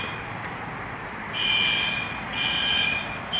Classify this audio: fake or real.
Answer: fake